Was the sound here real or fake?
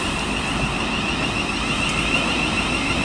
real